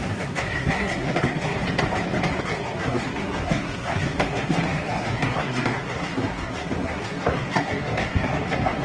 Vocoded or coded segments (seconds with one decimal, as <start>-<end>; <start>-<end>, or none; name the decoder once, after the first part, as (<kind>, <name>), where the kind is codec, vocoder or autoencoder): 0.0-1.6 (codec, SNAC); 2.4-8.8